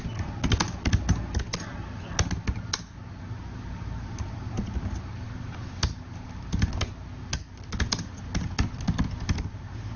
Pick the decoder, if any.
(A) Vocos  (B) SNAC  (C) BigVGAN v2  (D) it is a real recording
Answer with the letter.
D